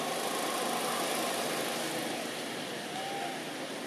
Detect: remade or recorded recorded